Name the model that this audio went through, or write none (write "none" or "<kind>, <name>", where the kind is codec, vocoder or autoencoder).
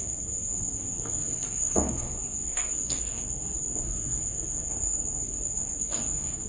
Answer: codec, SNAC